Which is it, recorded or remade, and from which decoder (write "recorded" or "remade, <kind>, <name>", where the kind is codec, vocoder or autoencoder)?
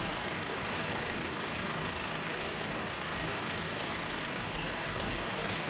remade, codec, DAC